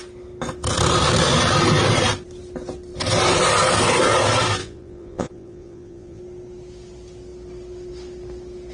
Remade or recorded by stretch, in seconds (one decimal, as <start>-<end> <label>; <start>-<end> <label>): 0.0-4.6 recorded; 4.6-6.2 remade; 6.2-8.7 recorded